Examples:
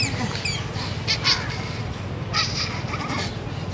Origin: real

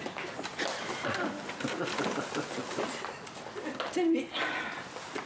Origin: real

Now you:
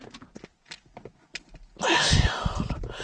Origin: real